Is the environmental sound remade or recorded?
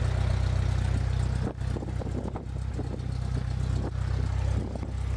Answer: recorded